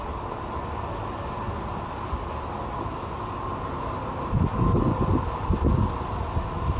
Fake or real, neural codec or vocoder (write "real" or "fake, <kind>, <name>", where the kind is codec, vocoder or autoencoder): real